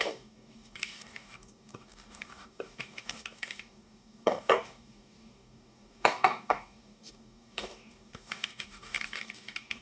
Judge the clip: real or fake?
fake